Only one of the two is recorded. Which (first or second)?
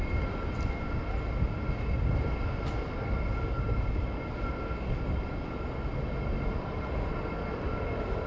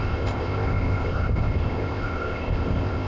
first